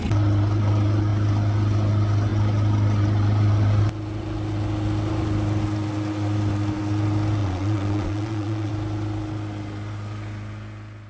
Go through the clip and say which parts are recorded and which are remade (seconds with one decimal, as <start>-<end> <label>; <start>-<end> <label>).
0.0-7.4 recorded; 7.4-8.7 remade; 8.7-11.1 recorded

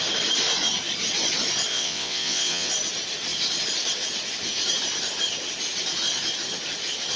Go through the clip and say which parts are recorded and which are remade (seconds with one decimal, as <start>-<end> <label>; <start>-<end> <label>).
0.0-1.7 recorded; 1.7-2.7 remade; 2.7-7.2 recorded

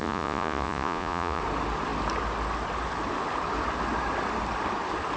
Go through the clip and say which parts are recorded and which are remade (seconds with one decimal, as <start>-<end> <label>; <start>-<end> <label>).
0.0-1.4 remade; 1.4-5.2 recorded

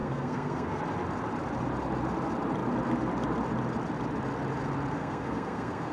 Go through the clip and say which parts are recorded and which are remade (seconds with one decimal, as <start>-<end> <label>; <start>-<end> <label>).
0.0-0.8 remade; 0.8-5.0 recorded; 5.0-5.9 remade